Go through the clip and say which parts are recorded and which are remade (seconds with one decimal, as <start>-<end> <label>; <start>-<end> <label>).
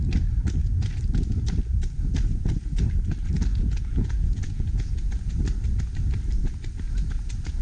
0.0-3.5 recorded; 3.5-4.9 remade; 4.9-7.6 recorded